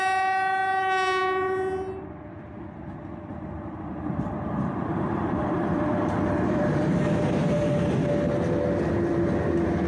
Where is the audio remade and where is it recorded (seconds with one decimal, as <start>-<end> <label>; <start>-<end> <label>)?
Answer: 0.0-3.3 recorded; 3.3-7.0 remade; 7.0-9.9 recorded